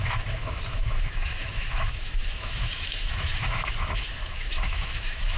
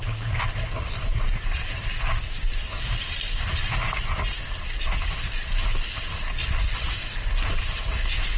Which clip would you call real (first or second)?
second